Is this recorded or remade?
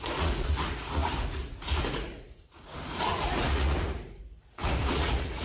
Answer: remade